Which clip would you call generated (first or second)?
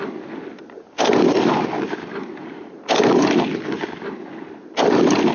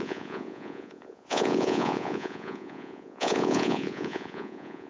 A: second